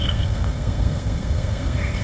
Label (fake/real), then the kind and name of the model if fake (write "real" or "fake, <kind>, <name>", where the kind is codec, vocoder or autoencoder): fake, codec, SNAC